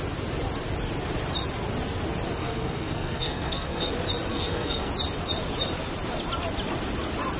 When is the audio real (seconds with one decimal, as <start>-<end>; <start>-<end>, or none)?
0.0-2.4; 3.9-4.3; 4.9-7.4